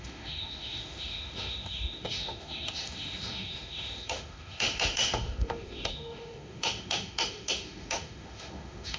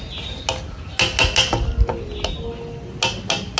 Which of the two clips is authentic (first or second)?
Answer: second